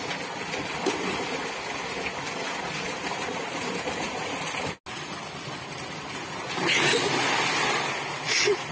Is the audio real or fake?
real